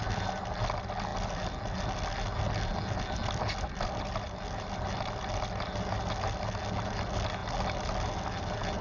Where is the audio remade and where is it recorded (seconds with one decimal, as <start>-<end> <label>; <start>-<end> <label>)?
0.0-8.8 recorded